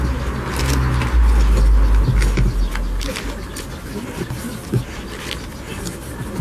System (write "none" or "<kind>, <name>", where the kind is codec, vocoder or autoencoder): none